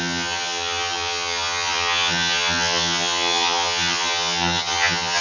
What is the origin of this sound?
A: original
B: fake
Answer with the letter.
B